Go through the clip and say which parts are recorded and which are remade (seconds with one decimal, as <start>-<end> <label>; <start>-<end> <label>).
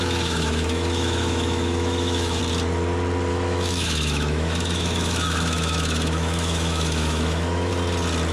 0.0-2.4 remade; 2.4-3.3 recorded; 3.3-7.7 remade; 7.7-8.3 recorded